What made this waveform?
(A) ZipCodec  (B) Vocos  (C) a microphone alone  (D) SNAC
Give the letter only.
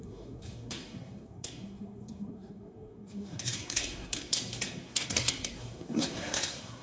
D